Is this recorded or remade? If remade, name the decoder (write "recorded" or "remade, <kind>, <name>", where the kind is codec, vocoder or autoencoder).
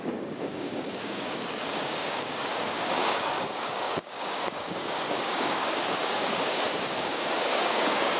remade, codec, DAC